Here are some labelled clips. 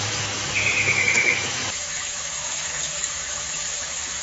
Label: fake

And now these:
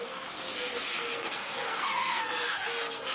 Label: fake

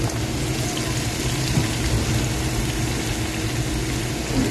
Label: real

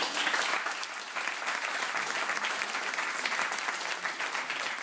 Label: real